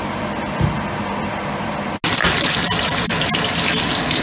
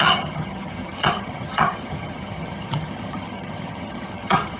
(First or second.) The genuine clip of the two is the first